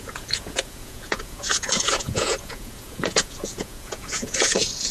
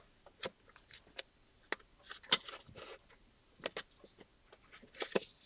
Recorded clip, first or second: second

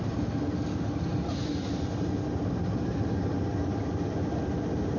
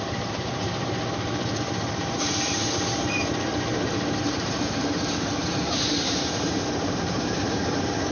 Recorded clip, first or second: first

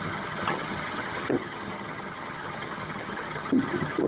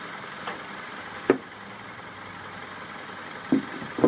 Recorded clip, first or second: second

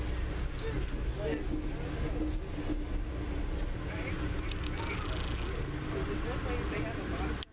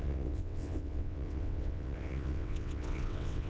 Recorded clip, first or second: first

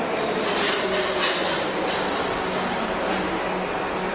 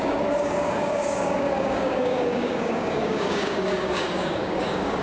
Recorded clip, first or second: first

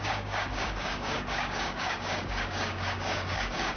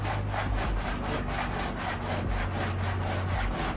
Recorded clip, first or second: second